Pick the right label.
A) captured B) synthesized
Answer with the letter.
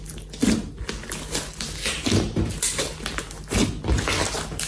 A